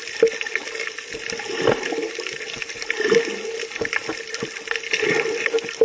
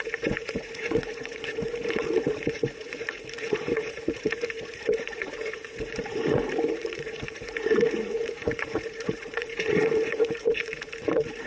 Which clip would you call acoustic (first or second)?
first